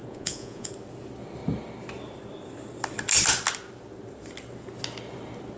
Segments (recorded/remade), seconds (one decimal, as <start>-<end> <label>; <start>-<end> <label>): 0.0-0.7 remade; 0.7-5.6 recorded